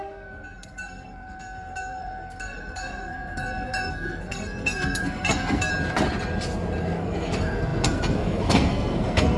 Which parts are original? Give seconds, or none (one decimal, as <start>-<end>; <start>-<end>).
5.7-6.8